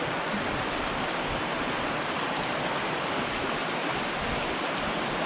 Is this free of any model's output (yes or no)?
yes